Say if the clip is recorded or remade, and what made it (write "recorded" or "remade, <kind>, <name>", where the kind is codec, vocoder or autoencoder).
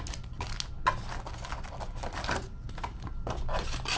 recorded